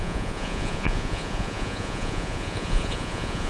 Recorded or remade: remade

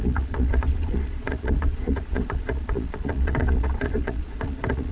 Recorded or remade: remade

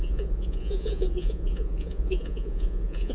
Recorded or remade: remade